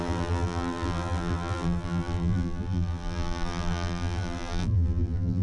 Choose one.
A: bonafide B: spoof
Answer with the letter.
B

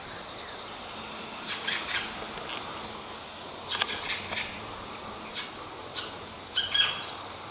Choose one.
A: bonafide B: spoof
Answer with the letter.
A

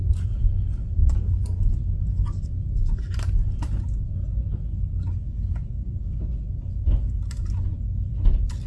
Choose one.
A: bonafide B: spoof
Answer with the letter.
A